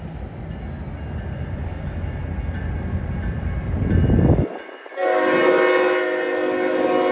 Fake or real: real